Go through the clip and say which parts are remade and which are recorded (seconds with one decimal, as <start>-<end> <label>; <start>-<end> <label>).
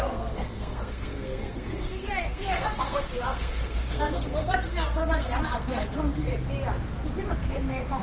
0.0-6.3 remade; 6.3-7.3 recorded; 7.3-8.0 remade